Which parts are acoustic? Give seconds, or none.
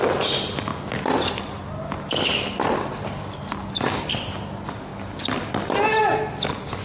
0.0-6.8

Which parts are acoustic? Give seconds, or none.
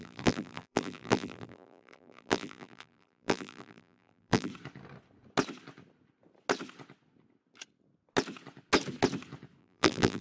4.5-9.6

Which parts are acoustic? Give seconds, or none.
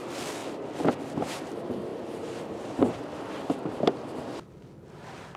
0.0-5.4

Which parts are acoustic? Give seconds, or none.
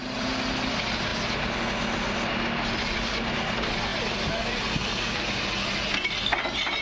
0.0-6.8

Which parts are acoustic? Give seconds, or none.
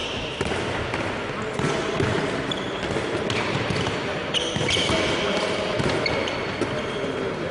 none